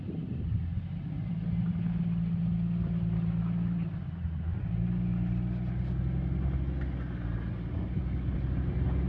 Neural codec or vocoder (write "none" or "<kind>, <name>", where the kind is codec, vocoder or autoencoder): none